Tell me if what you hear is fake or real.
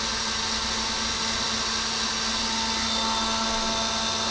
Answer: real